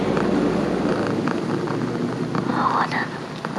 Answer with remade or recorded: recorded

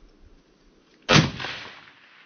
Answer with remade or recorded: recorded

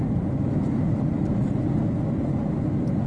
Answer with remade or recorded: recorded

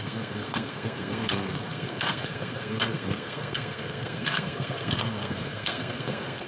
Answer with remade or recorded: remade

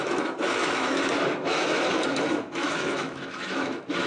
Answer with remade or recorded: remade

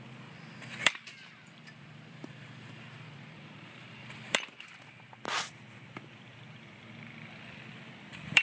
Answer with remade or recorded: remade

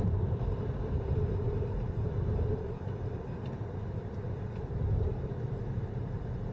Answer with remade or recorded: remade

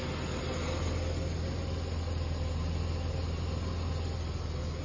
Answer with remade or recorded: recorded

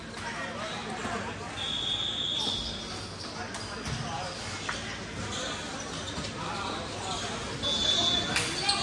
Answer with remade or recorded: recorded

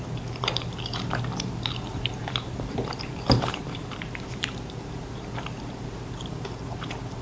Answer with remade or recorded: remade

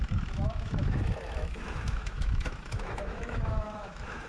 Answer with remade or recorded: remade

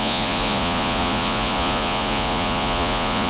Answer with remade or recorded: remade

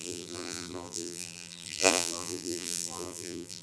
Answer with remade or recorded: remade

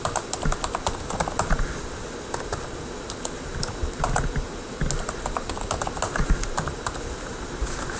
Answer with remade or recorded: recorded